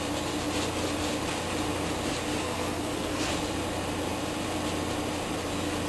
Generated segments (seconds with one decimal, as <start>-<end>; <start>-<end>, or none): 2.4-3.3

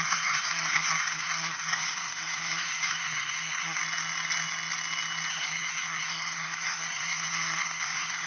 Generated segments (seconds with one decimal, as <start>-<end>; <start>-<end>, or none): 0.0-3.8; 5.3-8.3

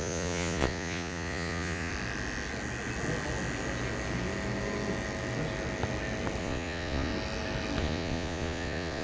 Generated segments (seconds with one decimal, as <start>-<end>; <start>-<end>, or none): 0.0-1.9; 6.4-7.1; 7.8-9.0

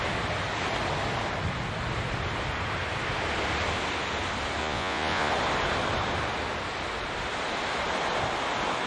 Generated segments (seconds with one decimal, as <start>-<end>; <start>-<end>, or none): 4.6-5.3

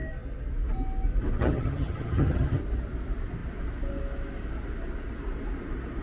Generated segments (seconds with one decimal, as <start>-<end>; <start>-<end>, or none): 1.4-2.6